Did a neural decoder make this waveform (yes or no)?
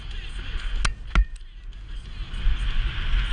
no